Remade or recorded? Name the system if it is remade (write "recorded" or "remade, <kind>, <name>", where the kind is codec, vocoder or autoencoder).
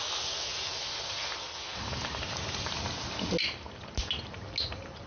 recorded